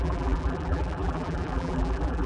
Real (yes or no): no